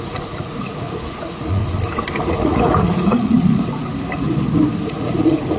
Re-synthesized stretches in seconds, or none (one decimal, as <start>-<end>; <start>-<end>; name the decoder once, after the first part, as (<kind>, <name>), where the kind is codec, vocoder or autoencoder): 0.0-1.6 (vocoder, Vocos); 2.3-3.9; 4.9-5.6